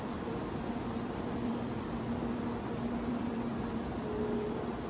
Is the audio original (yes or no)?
no